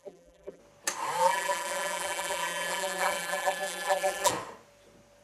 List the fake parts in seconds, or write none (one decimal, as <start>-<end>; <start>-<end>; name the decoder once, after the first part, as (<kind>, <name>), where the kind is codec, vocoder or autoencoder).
0.0-0.6 (vocoder, BigVGAN v2); 1.2-4.3